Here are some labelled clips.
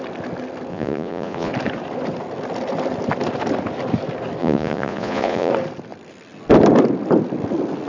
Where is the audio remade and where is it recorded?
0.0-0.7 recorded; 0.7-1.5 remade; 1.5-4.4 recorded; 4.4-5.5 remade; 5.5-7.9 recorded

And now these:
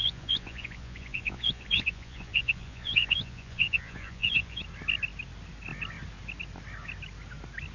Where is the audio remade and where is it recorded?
0.0-4.6 remade; 4.6-7.7 recorded

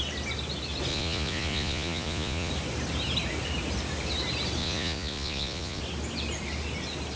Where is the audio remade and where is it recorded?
0.0-0.9 recorded; 0.9-2.5 remade; 2.5-4.6 recorded; 4.6-5.8 remade; 5.8-7.2 recorded